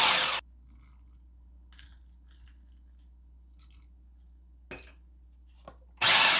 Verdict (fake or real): real